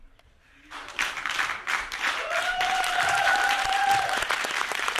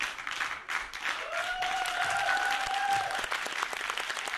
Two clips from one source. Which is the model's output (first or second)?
first